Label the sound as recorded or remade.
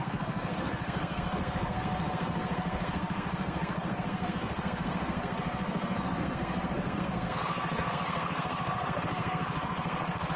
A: remade